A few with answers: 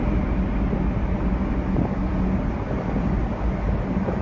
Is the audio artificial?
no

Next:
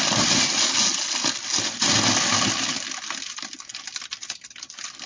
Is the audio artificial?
no